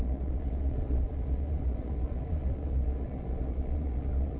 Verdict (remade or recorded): remade